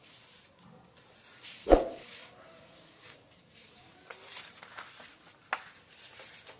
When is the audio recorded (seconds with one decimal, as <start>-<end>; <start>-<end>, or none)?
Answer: 0.0-1.6; 4.0-6.6